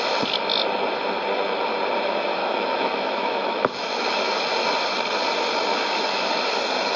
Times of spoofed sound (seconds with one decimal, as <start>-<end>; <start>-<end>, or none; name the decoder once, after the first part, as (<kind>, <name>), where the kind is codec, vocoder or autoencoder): 2.4-4.4 (autoencoder, DAC-VAE); 5.7-6.6